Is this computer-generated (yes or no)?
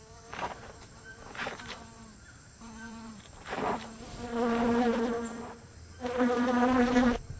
yes